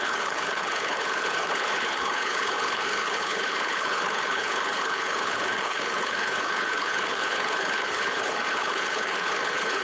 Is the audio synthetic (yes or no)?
yes